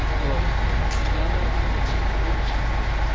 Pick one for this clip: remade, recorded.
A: recorded